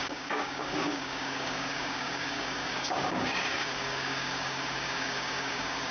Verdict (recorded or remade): remade